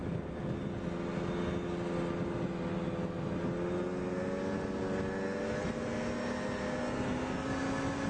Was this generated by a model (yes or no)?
no